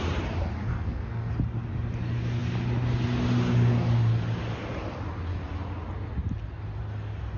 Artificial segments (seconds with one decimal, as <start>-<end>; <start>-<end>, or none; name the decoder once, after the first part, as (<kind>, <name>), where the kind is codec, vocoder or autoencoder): 0.7-1.3 (codec, SNAC)